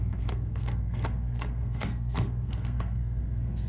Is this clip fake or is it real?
fake